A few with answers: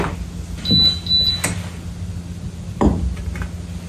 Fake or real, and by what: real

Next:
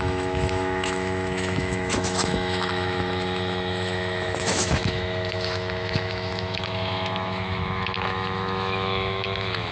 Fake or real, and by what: fake, autoencoder, DAC-VAE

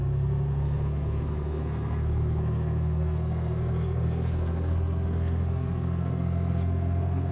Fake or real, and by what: fake, codec, SNAC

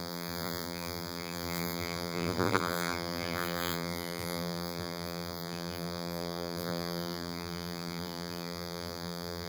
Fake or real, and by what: fake, vocoder, BigVGAN v2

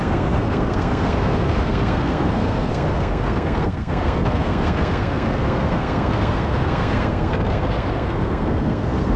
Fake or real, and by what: fake, codec, SNAC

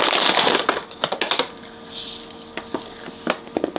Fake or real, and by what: real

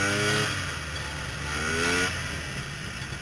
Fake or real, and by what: real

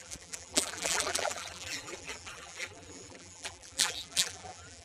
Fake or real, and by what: fake, vocoder, BigVGAN v2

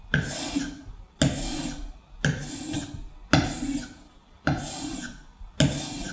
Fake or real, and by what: real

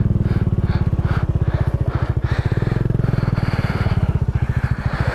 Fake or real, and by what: fake, vocoder, BigVGAN v2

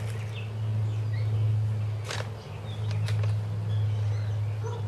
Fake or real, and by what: real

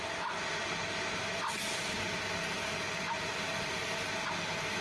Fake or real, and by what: real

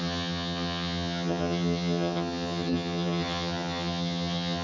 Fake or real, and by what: fake, vocoder, HiFi-GAN